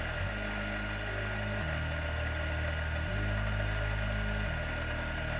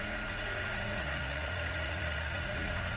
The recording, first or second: first